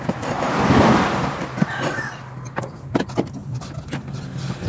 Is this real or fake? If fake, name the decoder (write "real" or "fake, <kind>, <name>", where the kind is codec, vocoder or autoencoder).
real